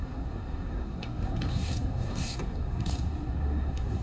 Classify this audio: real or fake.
fake